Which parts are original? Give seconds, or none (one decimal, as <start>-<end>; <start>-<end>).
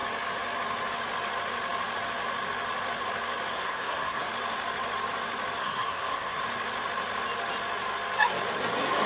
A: 0.0-3.5; 4.3-5.6; 6.4-9.1